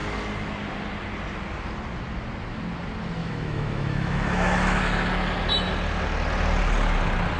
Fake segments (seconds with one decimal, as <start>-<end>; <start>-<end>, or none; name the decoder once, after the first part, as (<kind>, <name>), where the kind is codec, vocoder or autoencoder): 3.2-4.8 (autoencoder, DAC-VAE)